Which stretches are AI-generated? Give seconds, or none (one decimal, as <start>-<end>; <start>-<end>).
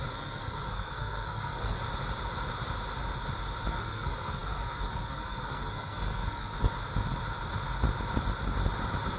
0.0-1.8; 3.7-6.5